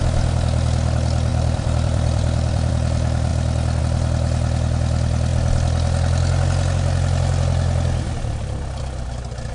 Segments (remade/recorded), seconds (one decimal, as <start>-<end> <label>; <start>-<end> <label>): 0.0-1.3 recorded; 1.3-2.7 remade; 2.7-9.5 recorded